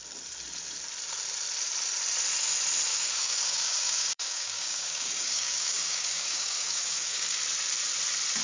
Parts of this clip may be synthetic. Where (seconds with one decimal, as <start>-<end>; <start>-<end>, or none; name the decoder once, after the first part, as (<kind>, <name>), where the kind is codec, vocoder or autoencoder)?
2.9-7.4 (codec, DAC)

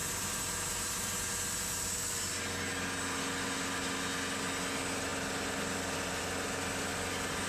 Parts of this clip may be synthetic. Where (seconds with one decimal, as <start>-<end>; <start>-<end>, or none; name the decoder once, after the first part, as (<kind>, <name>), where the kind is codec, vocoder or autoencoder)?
0.0-2.3 (vocoder, BigVGAN v2)

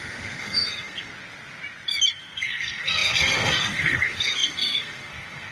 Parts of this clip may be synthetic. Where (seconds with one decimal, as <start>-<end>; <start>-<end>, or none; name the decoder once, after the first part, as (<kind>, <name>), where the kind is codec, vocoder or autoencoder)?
0.0-1.1 (codec, SNAC); 2.2-5.5

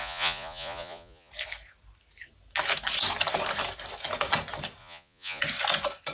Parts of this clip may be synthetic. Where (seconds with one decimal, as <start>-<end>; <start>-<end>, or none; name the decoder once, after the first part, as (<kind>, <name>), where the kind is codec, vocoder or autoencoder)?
0.0-1.3 (vocoder, Vocos); 4.8-5.4